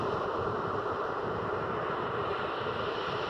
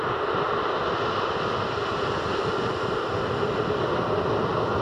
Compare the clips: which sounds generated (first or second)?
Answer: first